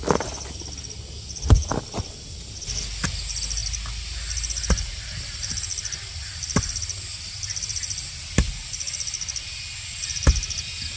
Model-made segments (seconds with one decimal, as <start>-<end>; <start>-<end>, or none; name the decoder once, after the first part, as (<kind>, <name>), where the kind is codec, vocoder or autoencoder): none